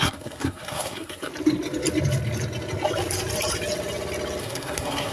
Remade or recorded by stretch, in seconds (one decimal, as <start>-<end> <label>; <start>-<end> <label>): 0.0-1.3 remade; 1.3-4.4 recorded; 4.4-5.1 remade